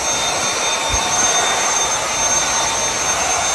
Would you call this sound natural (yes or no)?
yes